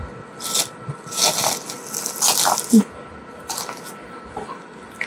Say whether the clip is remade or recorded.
recorded